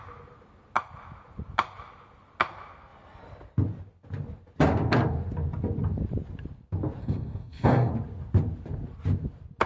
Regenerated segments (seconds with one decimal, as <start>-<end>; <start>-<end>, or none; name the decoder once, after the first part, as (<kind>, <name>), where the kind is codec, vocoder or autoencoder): 7.0-7.9 (codec, SNAC)